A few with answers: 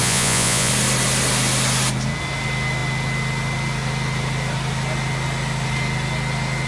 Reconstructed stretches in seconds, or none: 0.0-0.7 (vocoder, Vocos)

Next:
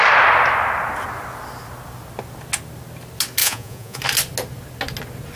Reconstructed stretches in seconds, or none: 3.4-4.0 (vocoder, Vocos)

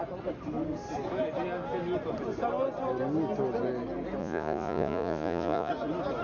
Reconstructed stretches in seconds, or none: 4.2-5.7 (vocoder, Vocos)

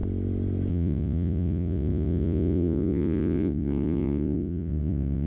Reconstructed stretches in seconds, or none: 0.7-5.3 (vocoder, Vocos)

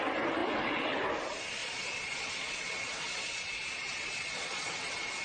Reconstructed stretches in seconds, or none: 1.6-4.7 (vocoder, Vocos)